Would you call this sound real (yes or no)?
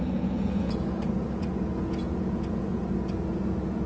no